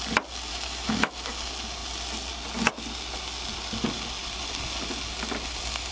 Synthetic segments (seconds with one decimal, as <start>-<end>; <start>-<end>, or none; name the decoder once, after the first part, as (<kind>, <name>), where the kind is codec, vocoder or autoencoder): 0.5-1.1 (autoencoder, DAC-VAE)